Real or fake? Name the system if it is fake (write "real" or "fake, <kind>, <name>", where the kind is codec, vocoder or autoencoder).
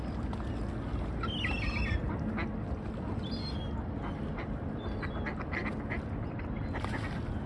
real